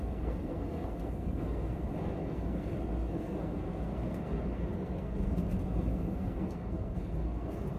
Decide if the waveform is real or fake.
fake